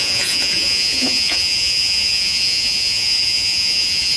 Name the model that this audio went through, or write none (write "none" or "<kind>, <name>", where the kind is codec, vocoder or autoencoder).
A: vocoder, Vocos